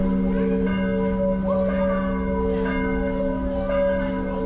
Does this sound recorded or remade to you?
recorded